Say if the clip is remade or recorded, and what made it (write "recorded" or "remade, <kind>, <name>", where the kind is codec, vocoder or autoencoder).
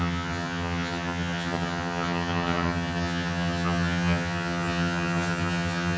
remade, vocoder, HiFi-GAN